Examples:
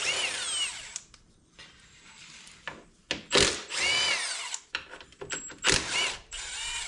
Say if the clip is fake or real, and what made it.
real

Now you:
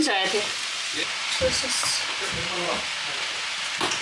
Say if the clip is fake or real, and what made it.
real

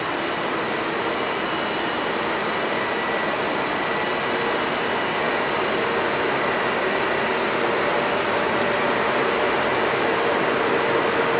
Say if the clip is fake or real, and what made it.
real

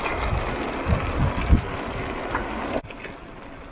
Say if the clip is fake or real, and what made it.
real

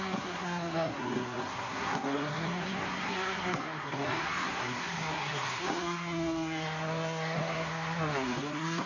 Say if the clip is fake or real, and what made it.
fake, codec, SNAC